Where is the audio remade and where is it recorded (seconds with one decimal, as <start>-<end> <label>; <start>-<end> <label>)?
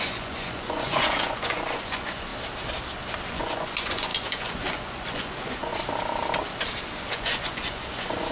0.0-2.3 remade; 2.3-3.3 recorded; 3.3-5.7 remade; 5.7-7.1 recorded; 7.1-8.3 remade